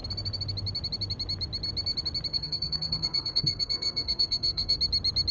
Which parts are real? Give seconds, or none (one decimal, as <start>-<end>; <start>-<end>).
0.0-2.3; 4.8-5.3